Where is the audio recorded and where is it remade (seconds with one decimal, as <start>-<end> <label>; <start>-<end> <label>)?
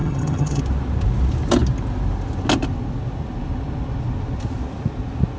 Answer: 0.0-0.6 remade; 0.6-5.4 recorded